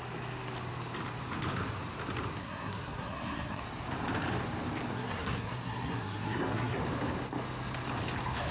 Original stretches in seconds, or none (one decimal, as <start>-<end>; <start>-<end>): 0.0-2.4; 3.6-4.9; 6.8-8.5